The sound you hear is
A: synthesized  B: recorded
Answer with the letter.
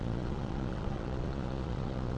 A